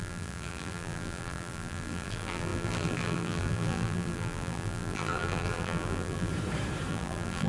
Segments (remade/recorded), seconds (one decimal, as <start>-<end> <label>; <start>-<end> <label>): 0.0-6.3 remade; 6.3-6.9 recorded; 6.9-7.5 remade